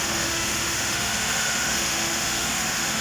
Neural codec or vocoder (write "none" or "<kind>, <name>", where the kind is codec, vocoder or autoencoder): autoencoder, DAC-VAE